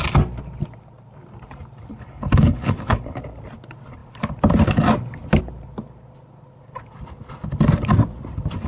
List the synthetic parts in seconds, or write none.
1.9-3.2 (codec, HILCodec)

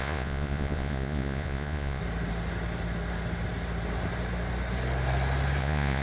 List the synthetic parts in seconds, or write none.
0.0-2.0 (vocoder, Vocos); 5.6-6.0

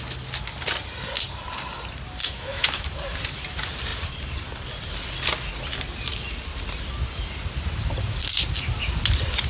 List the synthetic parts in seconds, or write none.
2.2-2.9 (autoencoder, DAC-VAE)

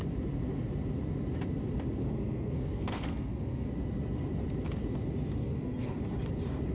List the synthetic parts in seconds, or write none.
2.0-3.7 (codec, SNAC); 5.4-6.0